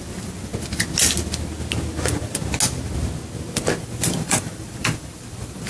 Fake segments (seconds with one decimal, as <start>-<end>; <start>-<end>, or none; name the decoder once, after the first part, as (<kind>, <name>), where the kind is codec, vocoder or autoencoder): 0.0-0.5 (vocoder, BigVGAN v2); 3.8-5.7